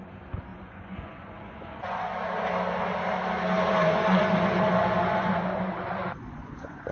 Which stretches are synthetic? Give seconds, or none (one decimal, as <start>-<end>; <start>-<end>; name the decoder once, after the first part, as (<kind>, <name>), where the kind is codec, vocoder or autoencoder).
0.0-2.1 (vocoder, Vocos); 3.7-6.9